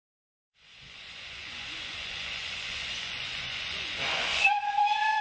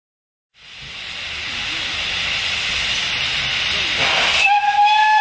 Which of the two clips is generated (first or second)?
first